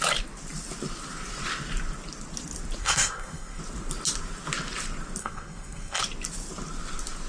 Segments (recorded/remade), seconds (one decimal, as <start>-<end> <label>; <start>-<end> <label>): 0.0-2.8 recorded; 2.8-3.6 remade; 3.6-5.2 recorded; 5.2-6.0 remade; 6.0-7.3 recorded